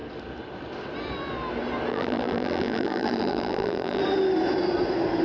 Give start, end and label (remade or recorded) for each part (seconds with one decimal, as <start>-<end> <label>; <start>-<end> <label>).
0.0-1.9 recorded; 1.9-4.0 remade; 4.0-5.2 recorded